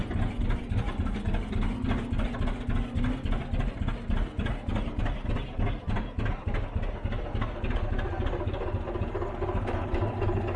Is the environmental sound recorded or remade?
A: recorded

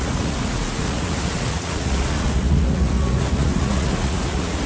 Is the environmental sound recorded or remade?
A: remade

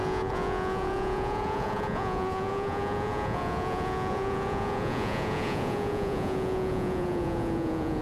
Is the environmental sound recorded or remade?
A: remade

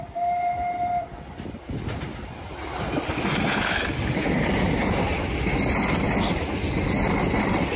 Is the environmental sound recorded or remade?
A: recorded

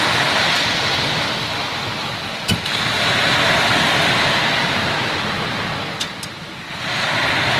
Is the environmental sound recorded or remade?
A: recorded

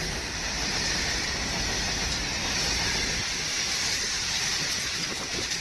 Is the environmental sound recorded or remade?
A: recorded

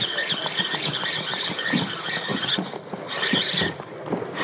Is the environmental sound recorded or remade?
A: recorded